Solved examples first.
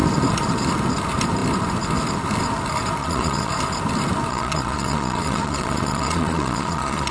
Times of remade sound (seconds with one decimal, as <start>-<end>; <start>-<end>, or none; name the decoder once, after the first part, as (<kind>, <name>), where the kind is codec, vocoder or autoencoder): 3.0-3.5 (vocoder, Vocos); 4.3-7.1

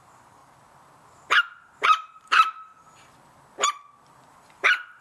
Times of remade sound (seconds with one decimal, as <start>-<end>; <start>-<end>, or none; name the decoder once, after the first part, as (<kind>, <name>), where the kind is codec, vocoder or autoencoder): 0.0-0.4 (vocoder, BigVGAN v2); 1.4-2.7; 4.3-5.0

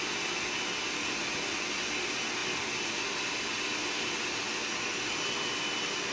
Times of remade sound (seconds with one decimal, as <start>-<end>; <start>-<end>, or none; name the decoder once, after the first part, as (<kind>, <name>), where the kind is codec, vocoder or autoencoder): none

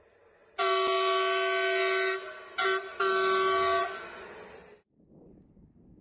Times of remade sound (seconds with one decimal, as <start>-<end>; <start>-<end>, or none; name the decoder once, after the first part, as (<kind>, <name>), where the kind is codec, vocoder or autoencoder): none

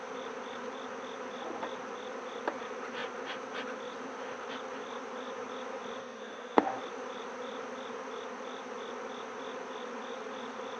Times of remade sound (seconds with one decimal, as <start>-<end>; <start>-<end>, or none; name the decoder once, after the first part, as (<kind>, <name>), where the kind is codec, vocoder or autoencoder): 6.0-6.6 (codec, SNAC)

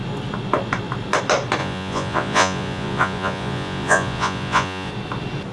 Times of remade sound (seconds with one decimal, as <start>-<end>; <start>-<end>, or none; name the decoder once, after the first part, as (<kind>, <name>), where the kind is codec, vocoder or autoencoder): 1.6-4.9 (vocoder, Vocos)